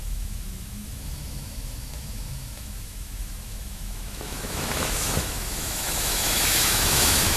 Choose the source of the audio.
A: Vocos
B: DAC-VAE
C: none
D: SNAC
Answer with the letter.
B